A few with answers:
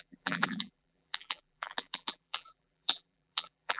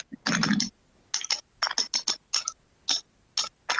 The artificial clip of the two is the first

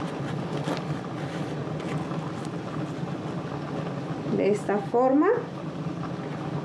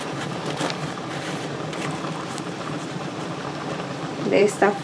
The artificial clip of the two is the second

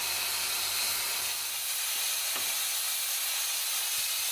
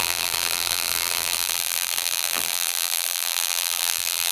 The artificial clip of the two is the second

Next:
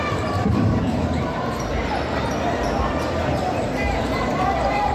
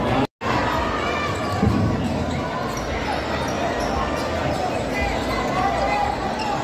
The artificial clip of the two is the first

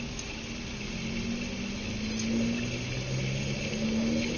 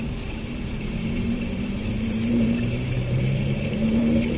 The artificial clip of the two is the second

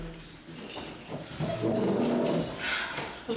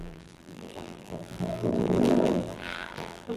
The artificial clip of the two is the second